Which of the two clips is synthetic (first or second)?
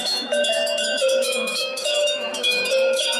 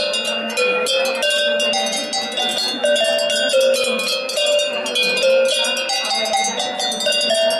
first